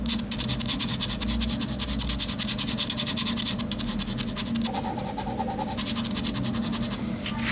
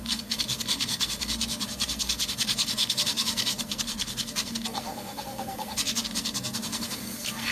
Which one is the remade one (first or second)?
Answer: second